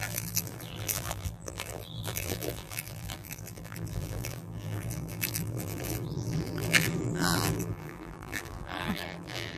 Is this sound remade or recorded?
remade